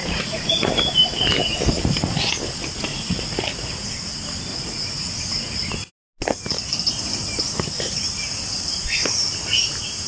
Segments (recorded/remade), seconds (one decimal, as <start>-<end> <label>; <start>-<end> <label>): 0.0-0.7 remade; 0.7-2.9 recorded; 2.9-3.9 remade; 3.9-4.5 recorded; 4.5-5.1 remade; 5.1-10.1 recorded